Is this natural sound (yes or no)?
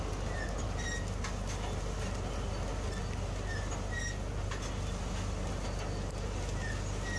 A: yes